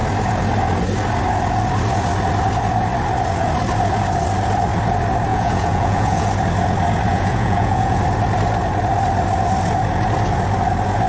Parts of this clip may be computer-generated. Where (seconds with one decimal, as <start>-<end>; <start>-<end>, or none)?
5.3-6.3; 7.1-8.0

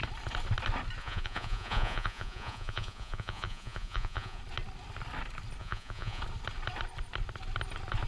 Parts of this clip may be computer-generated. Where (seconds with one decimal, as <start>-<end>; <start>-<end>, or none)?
1.0-4.4; 5.6-6.2

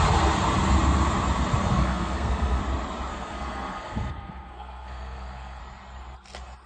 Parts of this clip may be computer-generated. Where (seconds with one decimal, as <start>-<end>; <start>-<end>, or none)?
1.6-2.6; 3.1-5.6

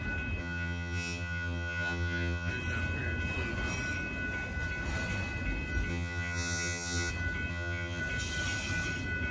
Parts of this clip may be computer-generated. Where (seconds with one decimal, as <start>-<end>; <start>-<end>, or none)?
0.4-2.5; 5.9-7.1; 7.5-8.0

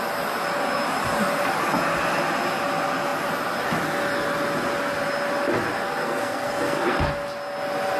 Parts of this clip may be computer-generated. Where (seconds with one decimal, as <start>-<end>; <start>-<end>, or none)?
6.0-7.1

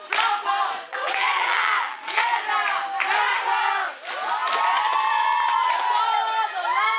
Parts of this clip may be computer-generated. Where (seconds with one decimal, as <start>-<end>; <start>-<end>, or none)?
0.9-2.4

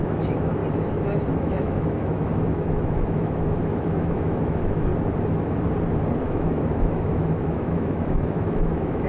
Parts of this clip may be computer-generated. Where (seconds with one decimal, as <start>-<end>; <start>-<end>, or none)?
0.0-0.6; 1.3-4.9; 6.2-9.1